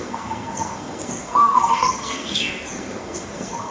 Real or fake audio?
fake